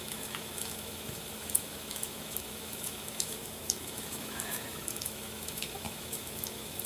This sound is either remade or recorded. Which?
remade